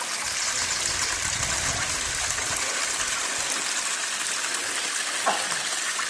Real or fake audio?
real